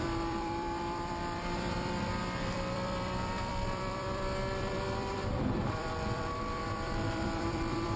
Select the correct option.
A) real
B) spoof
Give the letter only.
B